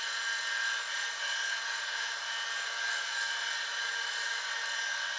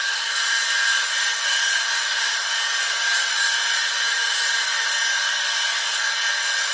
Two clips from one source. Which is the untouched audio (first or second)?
first